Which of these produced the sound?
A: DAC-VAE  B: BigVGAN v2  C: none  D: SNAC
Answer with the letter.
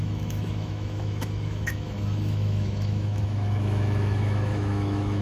A